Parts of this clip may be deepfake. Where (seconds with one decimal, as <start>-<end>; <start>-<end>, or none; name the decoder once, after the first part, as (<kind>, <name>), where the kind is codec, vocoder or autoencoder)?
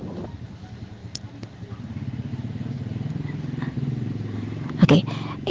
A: 2.3-4.9 (vocoder, BigVGAN v2)